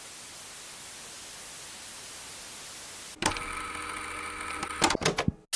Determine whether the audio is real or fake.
real